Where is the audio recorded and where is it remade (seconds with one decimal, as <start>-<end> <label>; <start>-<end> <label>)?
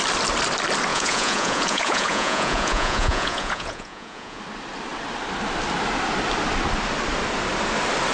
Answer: 0.0-0.9 recorded; 0.9-4.4 remade; 4.4-8.1 recorded